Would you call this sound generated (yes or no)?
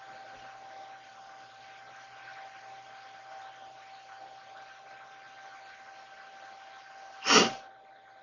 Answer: no